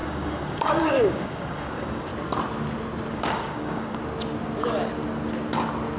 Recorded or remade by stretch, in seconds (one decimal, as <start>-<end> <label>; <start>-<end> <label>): 0.0-2.1 remade; 2.1-3.1 recorded; 3.1-4.0 remade; 4.0-6.0 recorded